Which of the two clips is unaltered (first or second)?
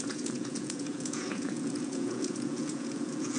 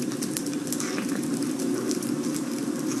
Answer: second